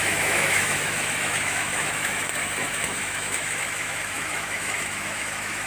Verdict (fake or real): fake